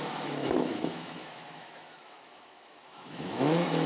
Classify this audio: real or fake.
fake